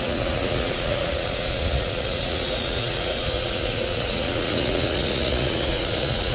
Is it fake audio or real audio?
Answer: fake